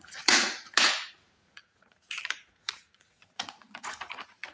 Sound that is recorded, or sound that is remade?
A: remade